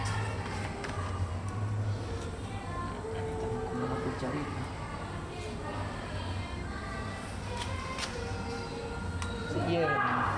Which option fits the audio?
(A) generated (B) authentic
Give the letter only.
B